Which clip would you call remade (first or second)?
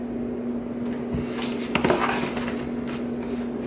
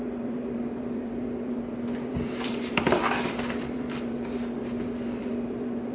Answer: second